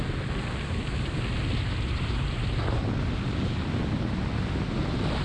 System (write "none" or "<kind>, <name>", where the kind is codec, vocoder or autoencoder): none